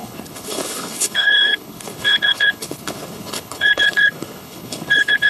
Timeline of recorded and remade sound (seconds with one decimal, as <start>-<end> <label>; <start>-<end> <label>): 0.0-5.3 remade

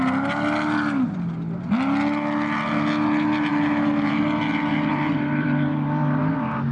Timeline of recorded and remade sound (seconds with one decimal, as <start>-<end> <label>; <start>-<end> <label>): 0.0-3.5 recorded; 3.5-4.2 remade; 4.2-4.9 recorded; 4.9-6.2 remade; 6.2-6.7 recorded

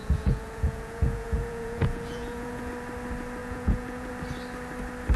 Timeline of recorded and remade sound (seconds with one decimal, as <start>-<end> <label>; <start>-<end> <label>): 0.0-2.7 remade; 2.7-3.4 recorded; 3.4-4.1 remade; 4.1-5.2 recorded

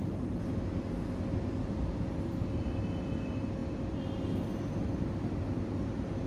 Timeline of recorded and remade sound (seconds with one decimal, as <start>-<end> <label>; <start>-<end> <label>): 0.0-6.3 recorded

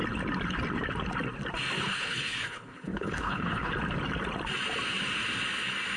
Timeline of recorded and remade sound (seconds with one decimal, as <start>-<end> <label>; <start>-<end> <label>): 0.0-1.8 recorded; 1.8-3.7 remade; 3.7-6.0 recorded